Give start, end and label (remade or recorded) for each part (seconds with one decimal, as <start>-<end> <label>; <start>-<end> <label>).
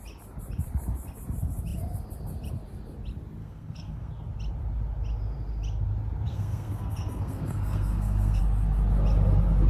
0.0-3.4 recorded; 3.4-4.1 remade; 4.1-6.3 recorded; 6.3-8.4 remade; 8.4-9.7 recorded